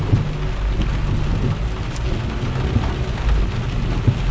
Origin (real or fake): real